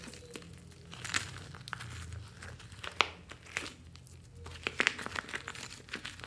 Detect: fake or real real